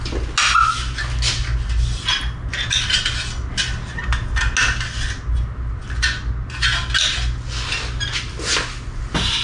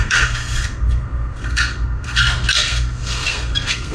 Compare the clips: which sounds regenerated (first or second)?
second